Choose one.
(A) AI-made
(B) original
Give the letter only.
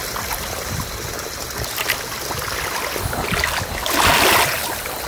B